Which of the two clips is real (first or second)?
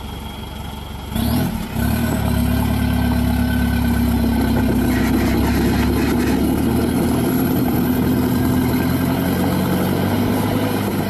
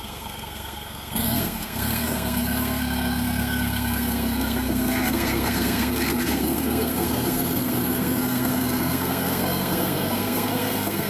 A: first